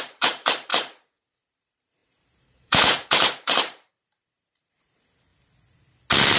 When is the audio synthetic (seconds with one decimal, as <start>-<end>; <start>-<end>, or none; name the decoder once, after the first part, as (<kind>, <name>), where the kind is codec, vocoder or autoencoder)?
0.0-0.7 (vocoder, BigVGAN v2); 1.5-5.3